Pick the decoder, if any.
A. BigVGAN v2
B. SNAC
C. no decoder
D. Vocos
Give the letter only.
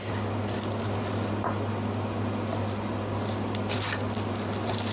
C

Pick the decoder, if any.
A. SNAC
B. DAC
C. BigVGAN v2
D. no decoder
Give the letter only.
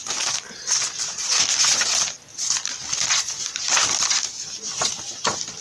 D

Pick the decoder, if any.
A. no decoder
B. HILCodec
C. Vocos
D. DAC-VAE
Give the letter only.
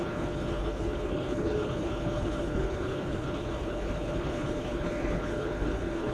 B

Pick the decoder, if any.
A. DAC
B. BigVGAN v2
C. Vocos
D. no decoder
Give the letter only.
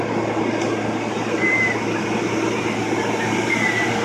D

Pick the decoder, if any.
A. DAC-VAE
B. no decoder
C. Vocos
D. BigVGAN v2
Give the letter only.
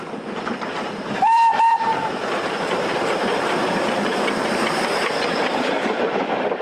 D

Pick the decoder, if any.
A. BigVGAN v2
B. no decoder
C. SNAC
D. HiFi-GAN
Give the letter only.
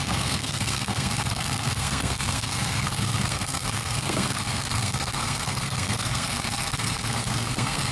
C